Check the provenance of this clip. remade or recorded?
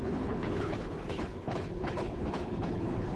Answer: remade